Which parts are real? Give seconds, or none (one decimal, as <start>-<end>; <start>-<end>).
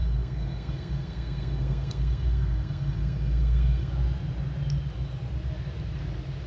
3.9-6.5